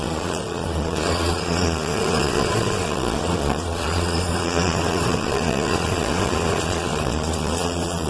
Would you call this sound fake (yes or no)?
yes